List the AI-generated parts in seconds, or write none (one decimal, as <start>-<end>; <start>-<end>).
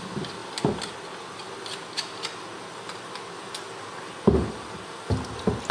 none